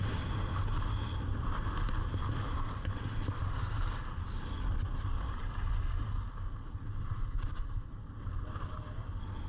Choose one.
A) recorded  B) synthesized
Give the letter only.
A